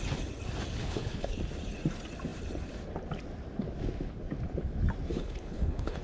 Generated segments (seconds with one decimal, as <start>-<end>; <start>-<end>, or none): 0.8-1.4; 5.1-6.0